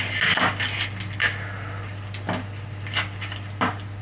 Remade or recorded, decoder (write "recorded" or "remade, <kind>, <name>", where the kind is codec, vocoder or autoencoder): recorded